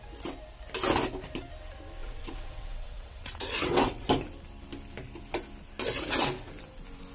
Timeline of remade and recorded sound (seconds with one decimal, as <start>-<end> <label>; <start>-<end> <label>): 0.0-2.0 recorded; 2.0-4.1 remade; 4.1-7.1 recorded